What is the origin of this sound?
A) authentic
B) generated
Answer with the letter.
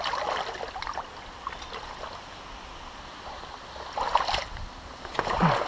A